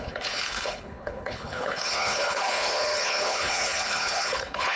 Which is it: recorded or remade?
remade